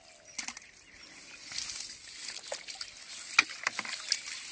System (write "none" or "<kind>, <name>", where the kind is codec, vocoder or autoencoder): none